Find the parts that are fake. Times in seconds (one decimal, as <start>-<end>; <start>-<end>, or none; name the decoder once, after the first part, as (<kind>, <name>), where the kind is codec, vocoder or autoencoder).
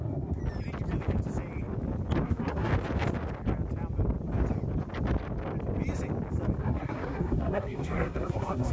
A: 0.0-0.4 (codec, SNAC); 2.2-2.7; 6.6-8.7